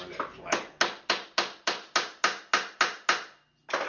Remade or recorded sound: recorded